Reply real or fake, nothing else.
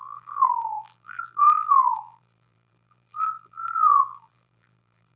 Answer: fake